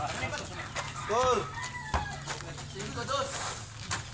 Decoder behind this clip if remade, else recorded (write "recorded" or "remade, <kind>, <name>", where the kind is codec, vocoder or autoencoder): recorded